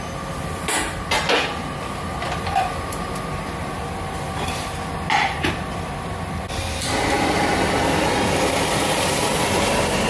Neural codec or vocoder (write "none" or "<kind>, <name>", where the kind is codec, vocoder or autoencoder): none